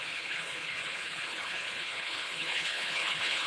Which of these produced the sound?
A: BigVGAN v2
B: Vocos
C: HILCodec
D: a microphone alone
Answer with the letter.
C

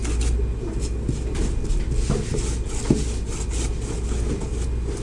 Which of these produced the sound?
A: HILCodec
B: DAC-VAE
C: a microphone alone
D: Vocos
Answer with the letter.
C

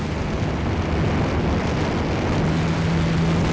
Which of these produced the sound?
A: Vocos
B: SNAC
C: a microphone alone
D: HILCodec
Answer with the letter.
C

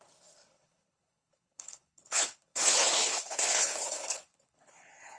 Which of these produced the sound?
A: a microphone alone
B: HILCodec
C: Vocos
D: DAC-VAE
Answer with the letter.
B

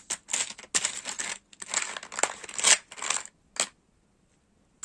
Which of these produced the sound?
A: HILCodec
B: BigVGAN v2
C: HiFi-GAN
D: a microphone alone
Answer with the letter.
D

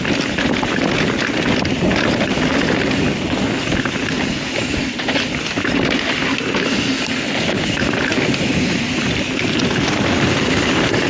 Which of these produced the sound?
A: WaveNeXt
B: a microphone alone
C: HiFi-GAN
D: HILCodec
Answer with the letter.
B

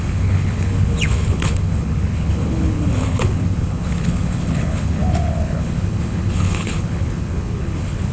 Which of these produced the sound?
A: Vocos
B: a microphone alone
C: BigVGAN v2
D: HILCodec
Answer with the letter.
D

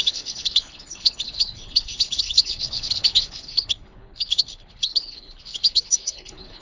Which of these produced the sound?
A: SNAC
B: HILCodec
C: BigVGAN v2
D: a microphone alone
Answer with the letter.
B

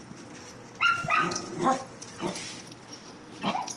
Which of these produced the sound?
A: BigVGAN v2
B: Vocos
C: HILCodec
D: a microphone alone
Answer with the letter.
D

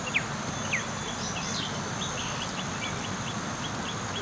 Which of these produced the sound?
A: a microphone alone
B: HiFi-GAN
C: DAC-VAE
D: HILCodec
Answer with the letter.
A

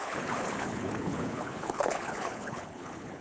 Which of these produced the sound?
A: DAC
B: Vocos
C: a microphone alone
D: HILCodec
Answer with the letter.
D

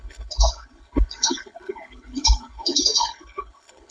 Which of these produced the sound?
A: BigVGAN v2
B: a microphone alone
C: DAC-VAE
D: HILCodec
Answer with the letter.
D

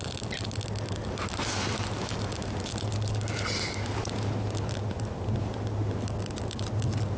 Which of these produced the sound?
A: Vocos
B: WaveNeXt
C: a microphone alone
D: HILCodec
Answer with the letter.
C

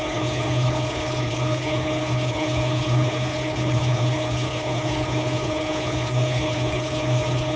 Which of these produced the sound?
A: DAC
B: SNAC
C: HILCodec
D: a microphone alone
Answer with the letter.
C